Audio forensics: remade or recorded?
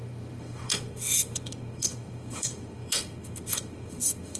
remade